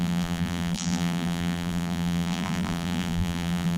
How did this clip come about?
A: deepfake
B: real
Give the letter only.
A